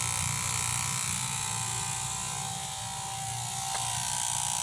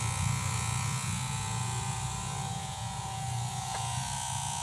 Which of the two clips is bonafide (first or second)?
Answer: first